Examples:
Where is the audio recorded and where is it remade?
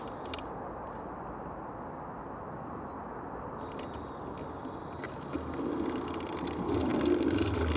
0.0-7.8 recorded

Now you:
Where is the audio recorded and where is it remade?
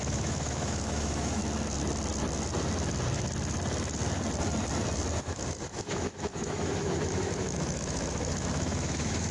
0.0-1.4 remade; 1.4-5.2 recorded; 5.2-9.3 remade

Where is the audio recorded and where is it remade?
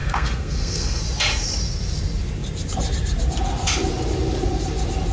0.0-1.0 remade; 1.0-5.1 recorded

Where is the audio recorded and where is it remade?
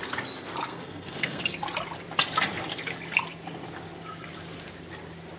0.0-0.7 recorded; 0.7-1.4 remade; 1.4-5.4 recorded